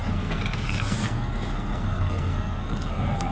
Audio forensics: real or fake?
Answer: fake